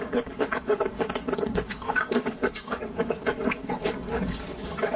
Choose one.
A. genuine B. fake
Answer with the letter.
B